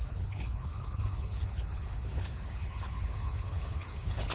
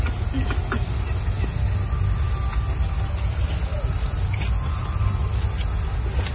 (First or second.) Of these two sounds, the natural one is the second